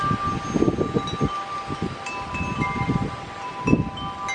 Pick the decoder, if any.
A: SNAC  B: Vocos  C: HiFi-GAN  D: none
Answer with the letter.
D